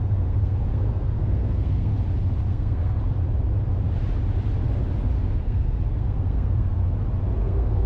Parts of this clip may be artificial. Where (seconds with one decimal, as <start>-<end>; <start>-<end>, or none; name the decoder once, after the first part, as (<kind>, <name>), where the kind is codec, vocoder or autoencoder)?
0.0-1.9 (codec, SNAC); 2.5-3.0; 5.4-6.8; 7.4-7.9